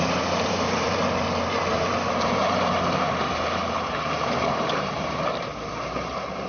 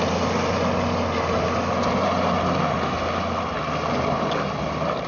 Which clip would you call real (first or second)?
second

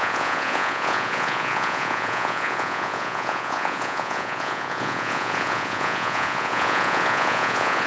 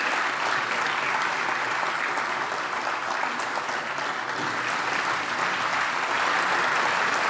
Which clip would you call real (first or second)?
second